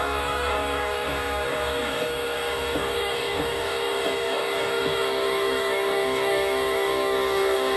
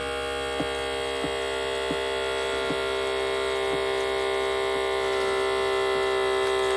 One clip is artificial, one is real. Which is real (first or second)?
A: second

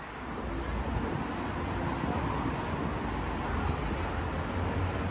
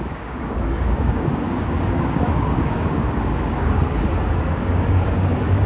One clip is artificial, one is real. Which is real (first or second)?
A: first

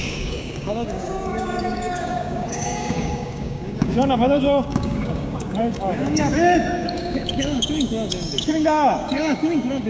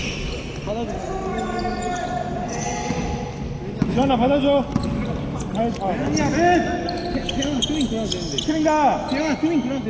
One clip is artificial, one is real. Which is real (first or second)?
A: second